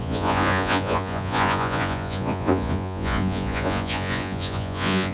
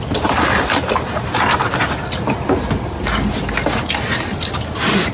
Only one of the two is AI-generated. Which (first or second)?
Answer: first